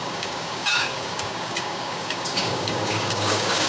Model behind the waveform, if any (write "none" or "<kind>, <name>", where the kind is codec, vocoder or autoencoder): codec, DAC